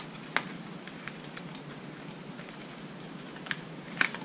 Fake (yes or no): no